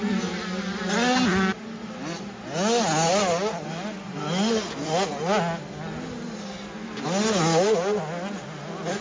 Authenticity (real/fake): real